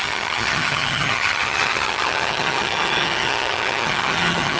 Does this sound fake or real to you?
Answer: fake